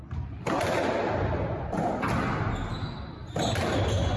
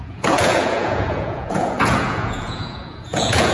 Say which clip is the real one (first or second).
first